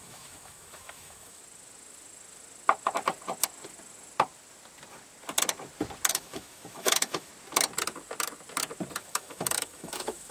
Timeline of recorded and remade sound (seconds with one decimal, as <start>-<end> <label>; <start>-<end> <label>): 0.0-1.4 remade; 1.4-6.1 recorded; 6.1-7.3 remade; 7.3-9.0 recorded; 9.0-10.3 remade